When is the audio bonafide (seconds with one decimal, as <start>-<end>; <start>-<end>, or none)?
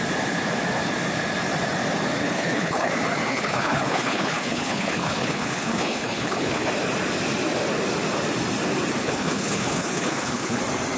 0.0-2.2; 2.9-3.3; 6.7-9.0; 10.6-11.0